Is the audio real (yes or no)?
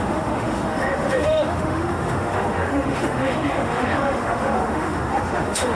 no